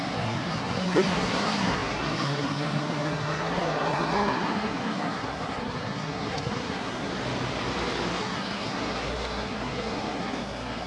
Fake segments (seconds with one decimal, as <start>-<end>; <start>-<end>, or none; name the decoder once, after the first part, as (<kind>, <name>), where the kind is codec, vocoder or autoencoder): 0.0-7.1 (codec, SNAC); 8.1-10.9